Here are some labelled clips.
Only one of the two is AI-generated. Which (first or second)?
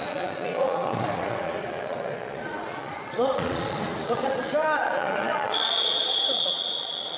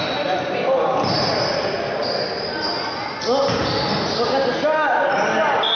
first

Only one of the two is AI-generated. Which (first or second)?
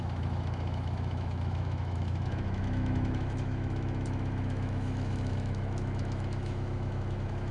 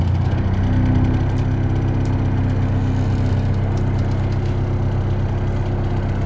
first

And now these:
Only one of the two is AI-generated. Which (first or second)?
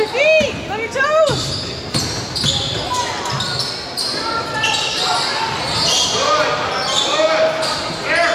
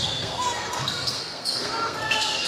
second